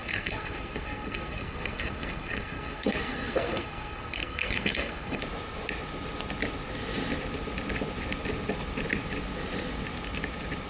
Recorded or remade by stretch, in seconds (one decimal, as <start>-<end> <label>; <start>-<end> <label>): 0.0-5.2 remade; 5.2-10.7 recorded